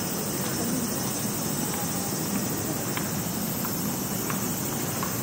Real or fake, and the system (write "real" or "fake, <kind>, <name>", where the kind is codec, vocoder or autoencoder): real